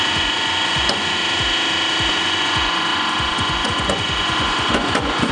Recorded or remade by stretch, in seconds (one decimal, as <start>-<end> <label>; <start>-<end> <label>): 0.0-1.2 remade; 1.2-2.1 recorded; 2.1-5.3 remade